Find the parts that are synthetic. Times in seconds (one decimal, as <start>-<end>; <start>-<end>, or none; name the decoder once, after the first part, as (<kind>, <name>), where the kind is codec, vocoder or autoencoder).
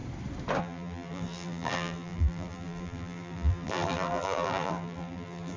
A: 0.6-5.6 (vocoder, BigVGAN v2)